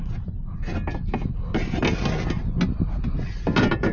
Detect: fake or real real